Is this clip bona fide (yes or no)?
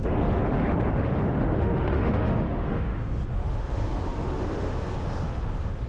no